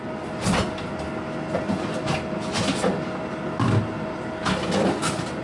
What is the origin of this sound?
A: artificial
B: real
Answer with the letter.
B